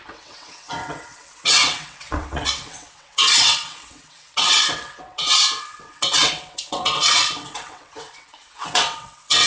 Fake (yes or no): yes